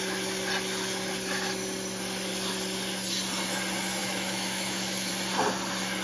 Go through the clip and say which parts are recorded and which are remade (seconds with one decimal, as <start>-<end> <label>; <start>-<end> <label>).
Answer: 0.0-4.0 recorded; 4.0-5.1 remade; 5.1-6.0 recorded

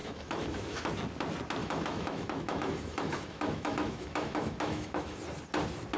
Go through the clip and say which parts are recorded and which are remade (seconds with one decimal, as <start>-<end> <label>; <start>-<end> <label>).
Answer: 0.0-0.9 remade; 0.9-1.6 recorded; 1.6-5.2 remade; 5.2-6.0 recorded

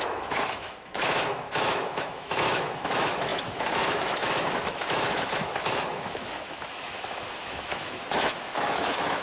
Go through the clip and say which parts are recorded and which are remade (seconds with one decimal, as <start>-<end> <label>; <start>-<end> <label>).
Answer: 0.0-9.2 remade

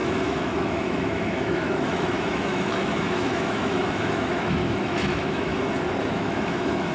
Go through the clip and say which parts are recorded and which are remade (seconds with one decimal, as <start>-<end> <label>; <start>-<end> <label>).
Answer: 0.0-5.5 remade; 5.5-6.1 recorded; 6.1-6.9 remade

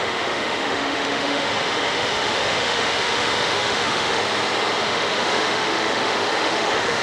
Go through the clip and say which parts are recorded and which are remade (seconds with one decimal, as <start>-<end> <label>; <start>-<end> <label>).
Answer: 0.0-4.2 remade; 4.2-4.8 recorded; 4.8-7.0 remade

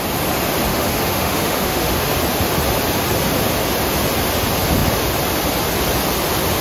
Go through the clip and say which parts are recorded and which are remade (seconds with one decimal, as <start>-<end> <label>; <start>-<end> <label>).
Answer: 0.0-0.7 recorded; 0.7-2.1 remade; 2.1-6.6 recorded

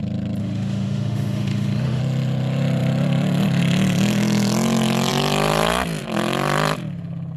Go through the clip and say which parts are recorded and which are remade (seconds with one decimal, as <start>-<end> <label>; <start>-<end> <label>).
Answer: 0.0-0.4 recorded; 0.4-2.0 remade; 2.0-7.4 recorded